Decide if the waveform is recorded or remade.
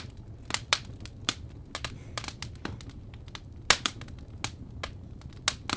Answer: recorded